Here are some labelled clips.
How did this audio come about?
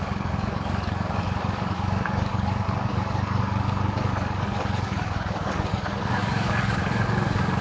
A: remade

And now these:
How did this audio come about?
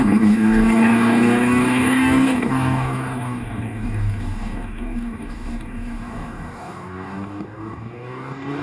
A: remade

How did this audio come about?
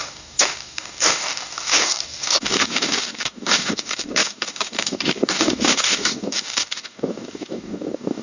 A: remade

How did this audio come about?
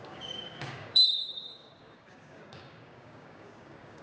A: remade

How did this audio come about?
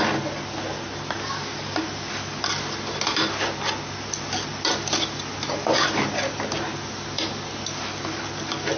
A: recorded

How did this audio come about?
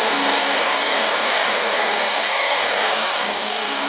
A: remade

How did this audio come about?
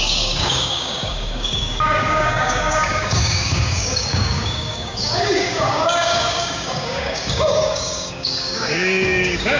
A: remade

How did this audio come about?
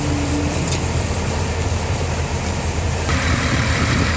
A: recorded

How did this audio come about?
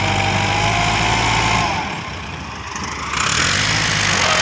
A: recorded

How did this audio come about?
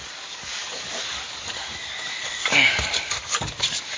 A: remade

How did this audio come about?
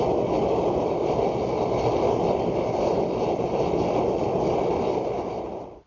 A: recorded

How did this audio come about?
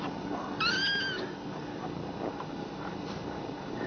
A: recorded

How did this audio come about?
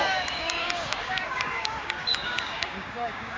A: remade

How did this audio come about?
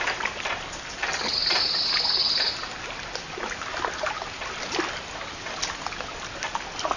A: recorded